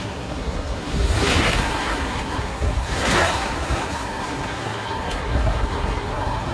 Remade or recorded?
remade